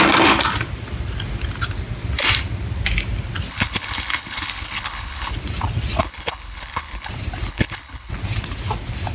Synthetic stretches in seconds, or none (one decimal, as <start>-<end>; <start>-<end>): 3.5-5.3; 6.0-7.1; 7.5-8.1